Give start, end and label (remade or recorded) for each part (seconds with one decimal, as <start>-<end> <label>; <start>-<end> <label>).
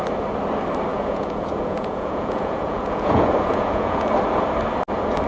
0.0-0.9 recorded; 0.9-4.1 remade; 4.1-5.3 recorded